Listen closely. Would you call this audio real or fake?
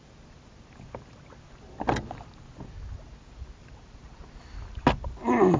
real